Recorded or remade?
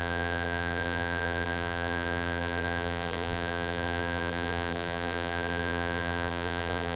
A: remade